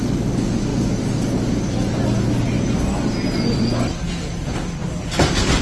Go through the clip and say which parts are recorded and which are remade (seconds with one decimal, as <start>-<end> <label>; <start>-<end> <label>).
0.0-5.6 recorded